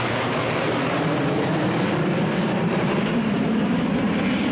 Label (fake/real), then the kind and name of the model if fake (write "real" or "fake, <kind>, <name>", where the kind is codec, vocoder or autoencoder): fake, vocoder, BigVGAN v2